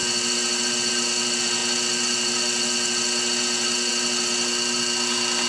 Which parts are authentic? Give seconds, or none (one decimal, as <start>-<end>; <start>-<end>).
0.0-5.5

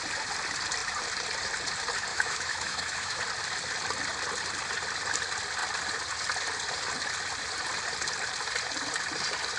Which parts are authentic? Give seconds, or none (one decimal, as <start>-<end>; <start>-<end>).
0.0-2.1; 3.2-9.6

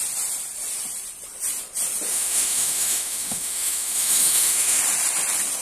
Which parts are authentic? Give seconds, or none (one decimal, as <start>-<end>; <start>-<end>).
0.0-2.1; 4.8-5.6

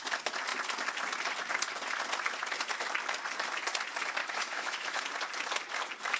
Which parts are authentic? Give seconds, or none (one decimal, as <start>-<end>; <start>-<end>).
0.0-4.2; 5.0-6.2

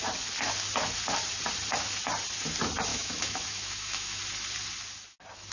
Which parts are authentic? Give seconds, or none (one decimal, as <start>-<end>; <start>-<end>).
0.0-2.9; 4.2-5.5

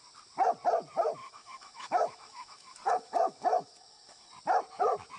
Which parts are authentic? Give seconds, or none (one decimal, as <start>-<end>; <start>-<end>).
0.0-1.2; 4.3-5.2

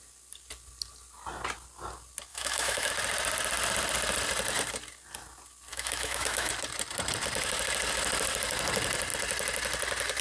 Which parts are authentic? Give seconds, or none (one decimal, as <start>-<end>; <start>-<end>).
0.0-2.3; 2.9-5.7; 6.5-10.2